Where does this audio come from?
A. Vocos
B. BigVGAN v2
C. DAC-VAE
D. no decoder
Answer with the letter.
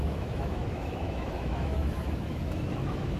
C